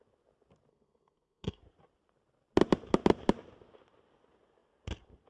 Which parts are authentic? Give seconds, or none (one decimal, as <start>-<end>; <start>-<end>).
0.0-0.7; 1.6-5.3